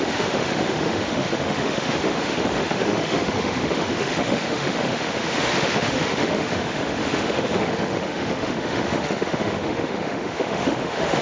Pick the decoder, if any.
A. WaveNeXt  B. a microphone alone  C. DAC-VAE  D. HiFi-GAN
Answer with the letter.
C